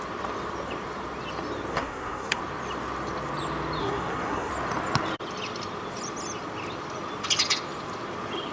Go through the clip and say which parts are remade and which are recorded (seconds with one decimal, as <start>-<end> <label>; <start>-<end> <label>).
0.0-1.7 recorded; 1.7-2.4 remade; 2.4-3.8 recorded; 3.8-4.5 remade; 4.5-8.5 recorded